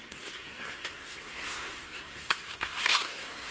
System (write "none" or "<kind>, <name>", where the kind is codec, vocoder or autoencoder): codec, SNAC